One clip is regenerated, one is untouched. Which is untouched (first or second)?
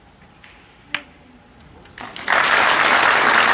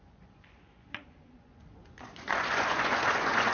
first